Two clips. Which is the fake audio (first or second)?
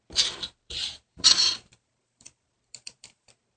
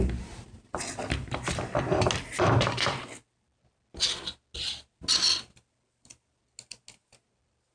first